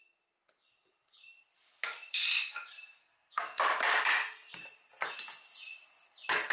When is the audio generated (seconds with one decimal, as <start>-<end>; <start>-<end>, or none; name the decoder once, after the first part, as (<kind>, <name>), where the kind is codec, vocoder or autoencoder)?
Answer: 3.0-3.6 (codec, SNAC)